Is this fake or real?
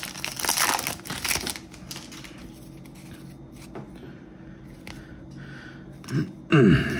real